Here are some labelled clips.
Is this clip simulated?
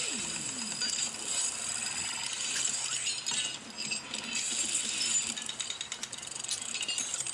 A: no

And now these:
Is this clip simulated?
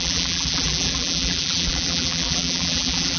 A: yes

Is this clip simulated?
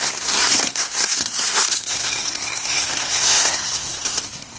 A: yes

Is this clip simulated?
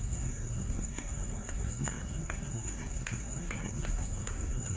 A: yes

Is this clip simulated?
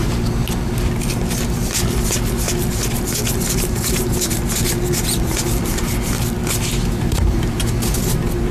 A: no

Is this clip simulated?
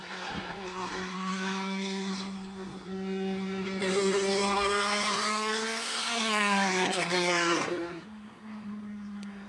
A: yes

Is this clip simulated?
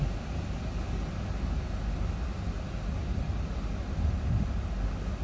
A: no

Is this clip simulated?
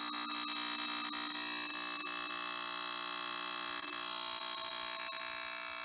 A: no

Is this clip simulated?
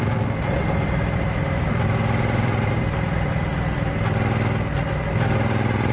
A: no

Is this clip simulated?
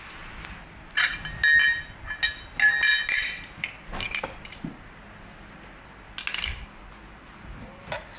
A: no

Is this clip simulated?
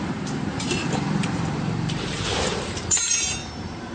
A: yes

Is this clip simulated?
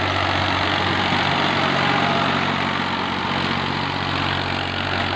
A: no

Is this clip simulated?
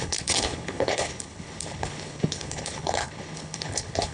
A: yes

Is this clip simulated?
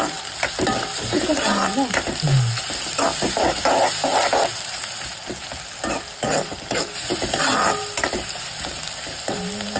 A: no